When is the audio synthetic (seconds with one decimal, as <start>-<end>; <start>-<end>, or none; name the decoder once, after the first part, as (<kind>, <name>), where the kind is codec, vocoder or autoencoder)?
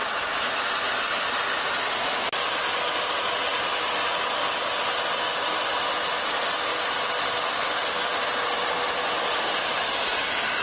none